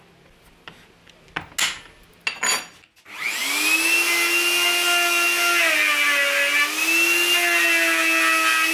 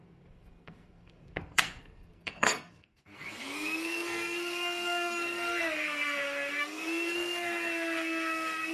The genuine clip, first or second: first